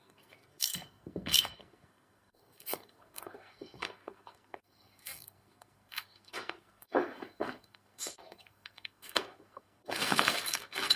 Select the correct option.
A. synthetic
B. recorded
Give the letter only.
A